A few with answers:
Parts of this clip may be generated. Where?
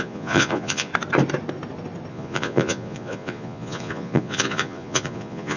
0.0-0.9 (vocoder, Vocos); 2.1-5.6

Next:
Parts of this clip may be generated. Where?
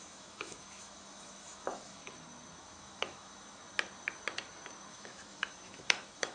0.0-2.0 (autoencoder, DAC-VAE); 2.6-3.6; 4.9-6.3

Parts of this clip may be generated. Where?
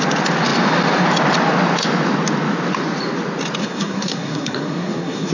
3.6-5.3 (codec, SNAC)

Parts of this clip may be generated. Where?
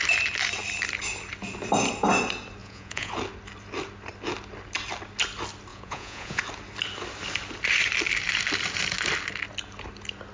2.6-3.1 (vocoder, Vocos); 5.7-6.4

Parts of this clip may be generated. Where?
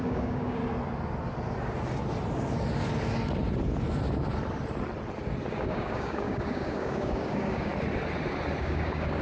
0.0-0.6 (codec, DAC); 5.5-7.7; 8.6-9.2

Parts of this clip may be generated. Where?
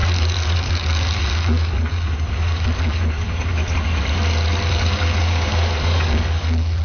0.0-3.6 (codec, DAC); 4.7-6.8